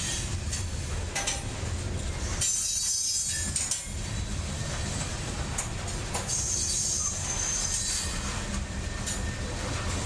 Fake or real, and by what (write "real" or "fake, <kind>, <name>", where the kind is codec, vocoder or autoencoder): real